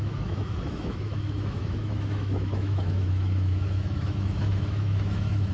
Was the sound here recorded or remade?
remade